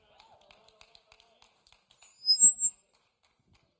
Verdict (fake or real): real